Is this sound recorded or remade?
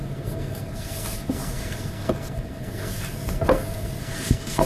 remade